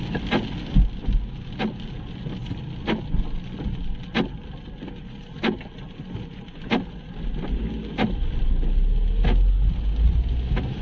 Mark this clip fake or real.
real